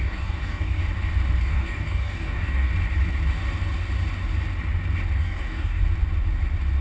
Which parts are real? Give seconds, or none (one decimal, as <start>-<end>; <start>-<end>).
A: 0.8-1.4; 2.7-5.2; 5.8-6.8